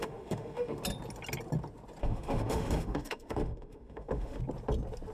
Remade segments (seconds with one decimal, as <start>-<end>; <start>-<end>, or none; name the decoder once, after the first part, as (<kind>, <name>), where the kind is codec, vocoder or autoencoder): 0.0-0.8 (autoencoder, DAC-VAE); 2.0-4.4